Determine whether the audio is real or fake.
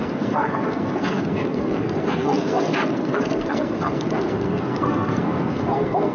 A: fake